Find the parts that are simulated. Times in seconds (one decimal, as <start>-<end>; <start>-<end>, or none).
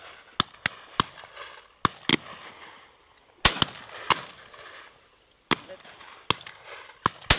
none